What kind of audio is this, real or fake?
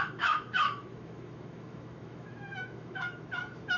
fake